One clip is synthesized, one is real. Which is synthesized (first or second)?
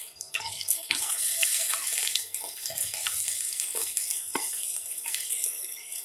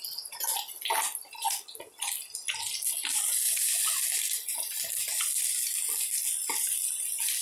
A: first